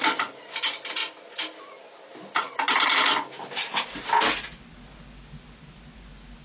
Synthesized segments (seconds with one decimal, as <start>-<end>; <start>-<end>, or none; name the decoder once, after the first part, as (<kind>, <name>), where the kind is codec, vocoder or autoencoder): none